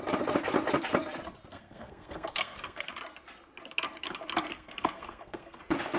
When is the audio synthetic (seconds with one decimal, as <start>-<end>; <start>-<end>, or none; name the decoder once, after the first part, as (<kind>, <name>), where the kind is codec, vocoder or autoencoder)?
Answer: 1.5-2.9 (codec, SNAC); 4.5-5.6